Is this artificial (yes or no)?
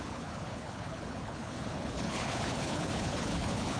yes